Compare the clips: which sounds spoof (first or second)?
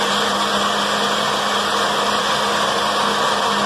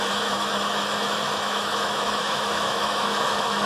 second